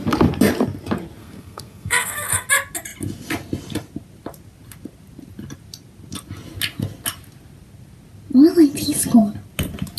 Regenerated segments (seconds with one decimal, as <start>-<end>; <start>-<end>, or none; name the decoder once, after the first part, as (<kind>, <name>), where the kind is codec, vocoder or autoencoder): 1.2-2.5 (codec, SNAC)